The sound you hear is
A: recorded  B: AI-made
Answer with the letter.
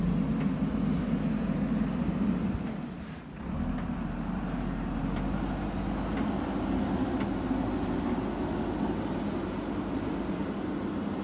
A